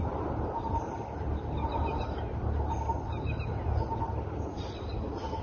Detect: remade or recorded recorded